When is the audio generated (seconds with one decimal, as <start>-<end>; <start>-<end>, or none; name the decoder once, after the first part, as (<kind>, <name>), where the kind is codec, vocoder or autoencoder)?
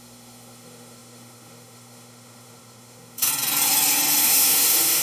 0.0-3.3 (autoencoder, DAC-VAE); 4.1-5.0